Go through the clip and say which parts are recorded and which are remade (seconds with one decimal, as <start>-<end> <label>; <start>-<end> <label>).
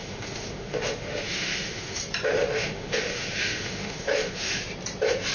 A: 0.0-2.0 remade; 2.0-2.4 recorded; 2.4-4.6 remade; 4.6-5.3 recorded